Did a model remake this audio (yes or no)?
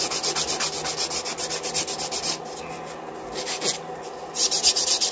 no